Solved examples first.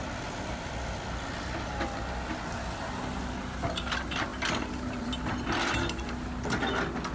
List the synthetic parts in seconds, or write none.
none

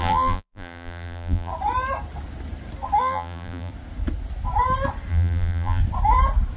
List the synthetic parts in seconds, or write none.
0.0-1.5 (vocoder, BigVGAN v2); 3.0-3.7; 5.1-5.8

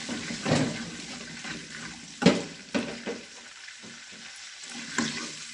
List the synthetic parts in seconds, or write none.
0.0-0.5 (vocoder, BigVGAN v2); 1.6-4.9

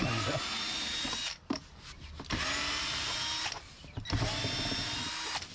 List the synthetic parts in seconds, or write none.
none

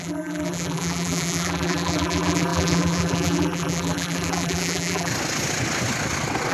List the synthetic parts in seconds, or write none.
0.0-5.1 (vocoder, BigVGAN v2)

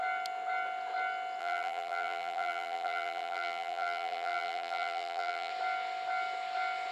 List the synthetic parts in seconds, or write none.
1.4-5.5 (vocoder, BigVGAN v2)